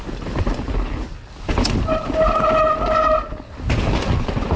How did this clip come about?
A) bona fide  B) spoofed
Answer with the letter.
A